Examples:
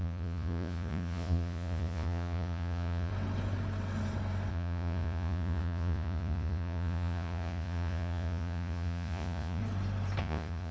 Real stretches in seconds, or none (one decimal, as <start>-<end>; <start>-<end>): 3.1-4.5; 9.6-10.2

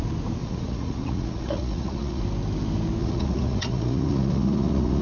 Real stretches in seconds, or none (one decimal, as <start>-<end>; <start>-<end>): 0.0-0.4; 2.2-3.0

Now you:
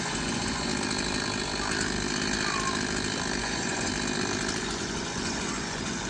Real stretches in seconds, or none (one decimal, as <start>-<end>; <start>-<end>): 0.7-3.4; 3.9-4.6

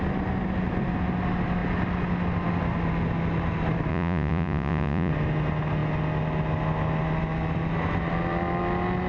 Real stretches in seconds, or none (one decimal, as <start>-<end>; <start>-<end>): 0.0-3.9; 5.1-9.1

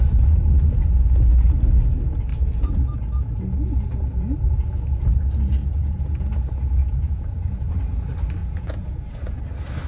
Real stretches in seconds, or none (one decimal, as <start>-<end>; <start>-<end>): 0.0-2.3; 3.4-5.6; 6.2-6.8; 7.7-8.4; 9.4-9.9

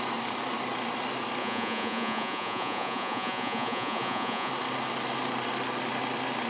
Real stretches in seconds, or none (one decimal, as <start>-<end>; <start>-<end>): 0.0-1.4; 4.5-6.5

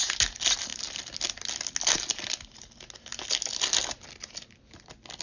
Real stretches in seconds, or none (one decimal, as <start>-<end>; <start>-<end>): 0.0-5.2